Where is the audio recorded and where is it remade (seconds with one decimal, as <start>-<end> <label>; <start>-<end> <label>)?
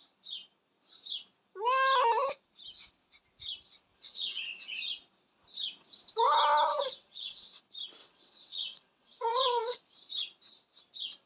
0.0-3.9 recorded; 3.9-4.8 remade; 4.8-6.7 recorded; 6.7-7.6 remade; 7.6-8.0 recorded; 8.0-9.8 remade; 9.8-11.3 recorded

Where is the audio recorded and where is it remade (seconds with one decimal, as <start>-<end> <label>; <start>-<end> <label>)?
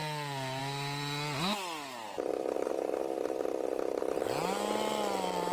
0.0-5.5 recorded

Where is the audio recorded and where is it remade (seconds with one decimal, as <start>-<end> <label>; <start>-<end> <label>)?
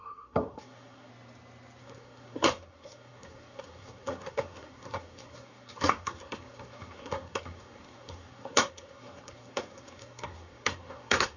0.0-1.1 remade; 1.1-1.8 recorded; 1.8-11.4 remade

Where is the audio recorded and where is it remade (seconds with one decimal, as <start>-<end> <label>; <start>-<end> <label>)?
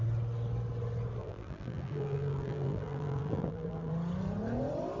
0.0-1.2 recorded; 1.2-3.9 remade; 3.9-5.0 recorded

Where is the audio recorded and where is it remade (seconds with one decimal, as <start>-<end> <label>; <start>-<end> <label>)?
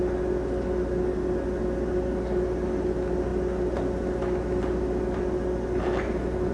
0.0-6.5 recorded